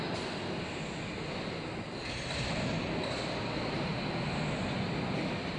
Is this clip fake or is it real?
real